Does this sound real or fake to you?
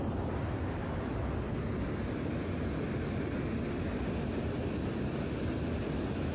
real